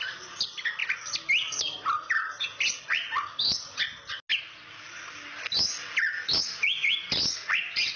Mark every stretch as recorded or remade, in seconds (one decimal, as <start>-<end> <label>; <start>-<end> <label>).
0.0-8.0 recorded